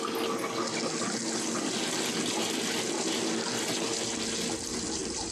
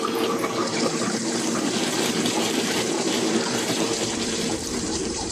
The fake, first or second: second